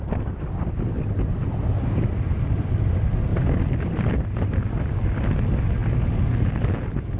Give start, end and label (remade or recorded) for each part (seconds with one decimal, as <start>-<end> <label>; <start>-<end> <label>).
0.0-1.4 remade; 1.4-2.1 recorded; 2.1-5.8 remade; 5.8-6.4 recorded; 6.4-7.2 remade